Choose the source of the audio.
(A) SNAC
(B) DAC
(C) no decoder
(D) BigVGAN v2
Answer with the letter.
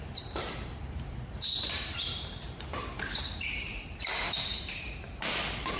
D